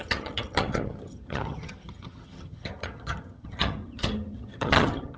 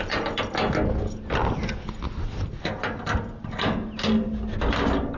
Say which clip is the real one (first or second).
second